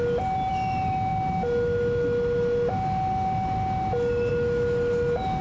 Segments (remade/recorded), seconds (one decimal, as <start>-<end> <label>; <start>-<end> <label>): 0.0-5.4 recorded